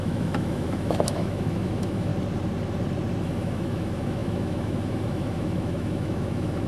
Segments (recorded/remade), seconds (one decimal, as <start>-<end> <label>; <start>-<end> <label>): 0.0-2.1 remade; 2.1-3.2 recorded; 3.2-6.7 remade